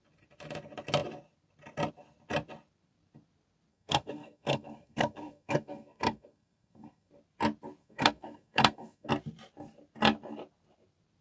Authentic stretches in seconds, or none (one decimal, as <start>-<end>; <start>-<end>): 0.0-3.7; 7.1-7.8; 9.1-11.2